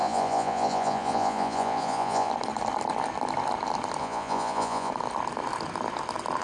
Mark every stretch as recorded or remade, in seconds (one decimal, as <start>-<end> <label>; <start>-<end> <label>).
0.0-2.3 remade; 2.3-4.0 recorded; 4.0-4.9 remade; 4.9-6.4 recorded